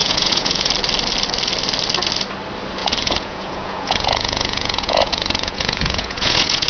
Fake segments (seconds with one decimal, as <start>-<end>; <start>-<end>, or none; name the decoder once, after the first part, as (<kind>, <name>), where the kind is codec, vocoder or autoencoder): 0.0-0.7 (vocoder, Vocos); 2.8-6.7